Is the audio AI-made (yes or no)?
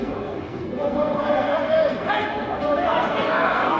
yes